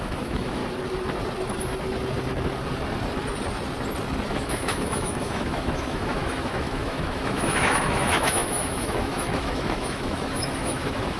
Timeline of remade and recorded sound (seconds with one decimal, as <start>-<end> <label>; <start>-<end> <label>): 0.0-0.6 remade; 0.6-4.3 recorded; 4.3-11.2 remade